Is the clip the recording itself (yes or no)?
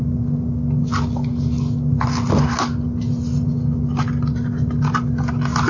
yes